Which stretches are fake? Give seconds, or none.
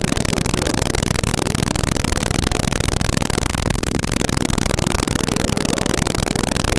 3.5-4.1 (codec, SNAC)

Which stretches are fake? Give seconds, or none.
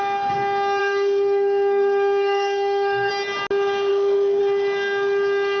0.8-3.1 (codec, SNAC); 3.9-4.4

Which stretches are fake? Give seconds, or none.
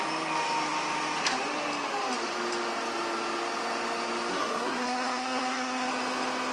4.3-5.9 (codec, SNAC)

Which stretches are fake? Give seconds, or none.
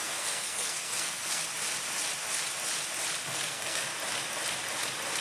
0.0-1.4 (codec, SNAC); 3.3-3.9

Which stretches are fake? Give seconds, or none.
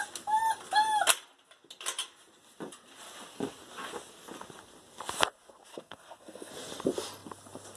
5.7-6.5 (codec, SNAC)